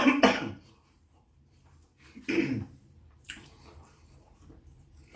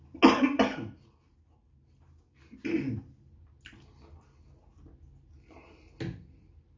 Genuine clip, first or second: second